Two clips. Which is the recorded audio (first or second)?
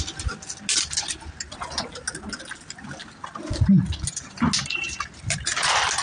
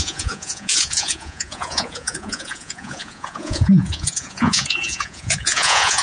first